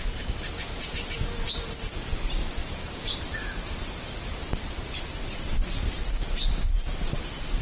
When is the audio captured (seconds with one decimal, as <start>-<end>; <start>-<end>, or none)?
0.0-2.6; 3.8-7.6